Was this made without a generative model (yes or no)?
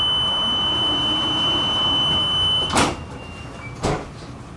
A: yes